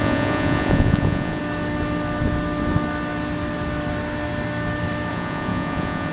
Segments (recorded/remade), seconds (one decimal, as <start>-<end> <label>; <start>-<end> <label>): 0.0-1.4 remade; 1.4-5.1 recorded; 5.1-6.1 remade